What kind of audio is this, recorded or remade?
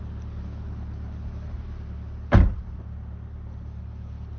recorded